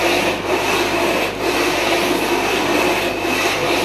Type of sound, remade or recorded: recorded